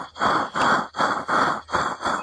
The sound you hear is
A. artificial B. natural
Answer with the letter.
B